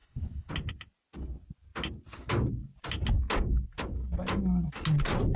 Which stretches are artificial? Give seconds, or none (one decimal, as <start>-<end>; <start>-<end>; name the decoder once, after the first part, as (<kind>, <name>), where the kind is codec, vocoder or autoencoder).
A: 0.0-0.5 (codec, HILCodec)